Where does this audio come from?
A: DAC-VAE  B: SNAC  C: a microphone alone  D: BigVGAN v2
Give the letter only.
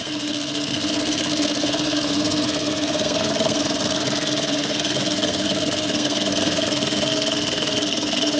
B